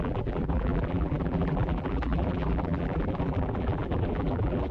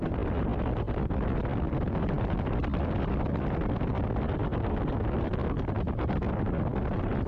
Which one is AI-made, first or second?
first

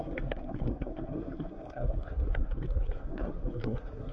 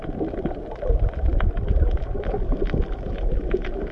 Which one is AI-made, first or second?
first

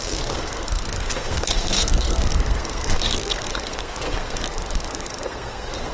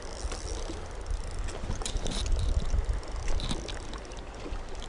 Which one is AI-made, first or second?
first